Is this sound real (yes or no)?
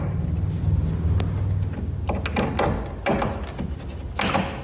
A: yes